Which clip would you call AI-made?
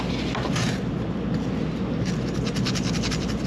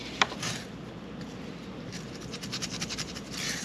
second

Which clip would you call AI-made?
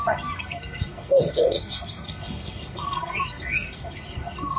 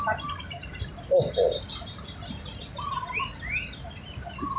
first